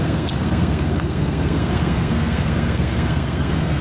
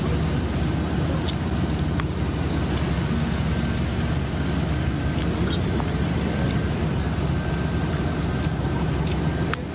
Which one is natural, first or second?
second